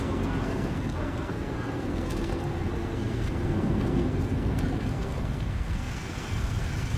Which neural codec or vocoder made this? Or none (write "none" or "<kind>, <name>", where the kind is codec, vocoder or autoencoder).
codec, SNAC